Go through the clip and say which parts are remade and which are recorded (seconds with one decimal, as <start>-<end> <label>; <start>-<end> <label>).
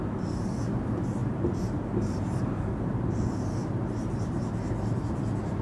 0.0-5.6 recorded